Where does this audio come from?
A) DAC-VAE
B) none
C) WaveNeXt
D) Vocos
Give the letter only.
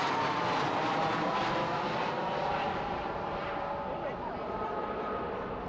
B